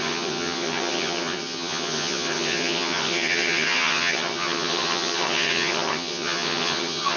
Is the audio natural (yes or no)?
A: no